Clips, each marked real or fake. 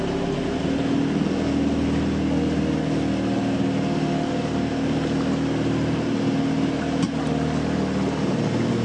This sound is real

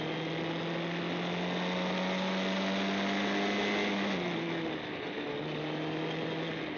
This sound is real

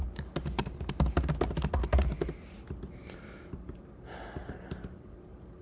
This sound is real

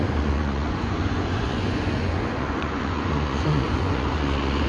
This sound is fake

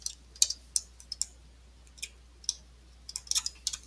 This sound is real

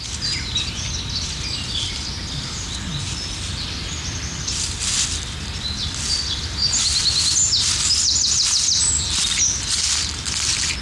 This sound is real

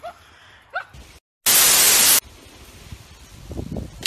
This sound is real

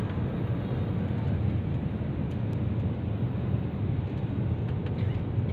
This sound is real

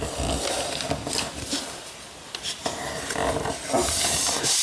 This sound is real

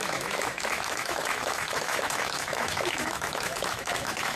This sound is fake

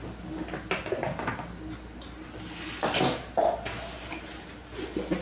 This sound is real